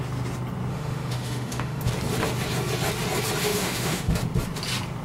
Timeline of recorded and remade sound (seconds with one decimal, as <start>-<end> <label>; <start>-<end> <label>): 0.0-0.7 recorded; 0.7-1.9 remade; 1.9-3.4 recorded; 3.4-4.2 remade; 4.2-5.0 recorded

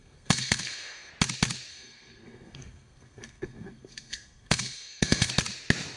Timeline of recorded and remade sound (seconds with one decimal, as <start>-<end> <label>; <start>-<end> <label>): 0.0-1.1 remade; 1.1-1.7 recorded; 1.7-5.3 remade; 5.3-6.0 recorded

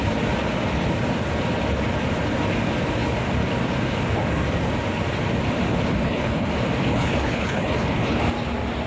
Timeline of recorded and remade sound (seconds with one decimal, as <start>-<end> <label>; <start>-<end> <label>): 0.0-6.0 recorded; 6.0-6.5 remade; 6.5-6.9 recorded; 6.9-8.2 remade; 8.2-8.9 recorded